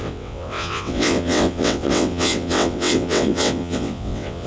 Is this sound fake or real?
fake